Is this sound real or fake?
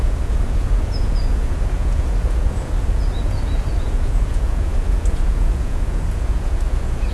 fake